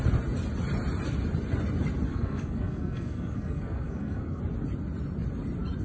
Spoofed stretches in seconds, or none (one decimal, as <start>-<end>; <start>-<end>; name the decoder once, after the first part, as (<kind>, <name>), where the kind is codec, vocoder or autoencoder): 2.1-4.4 (codec, SNAC)